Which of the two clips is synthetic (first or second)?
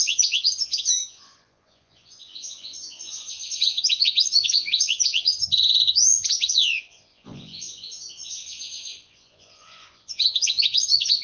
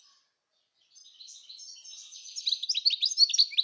first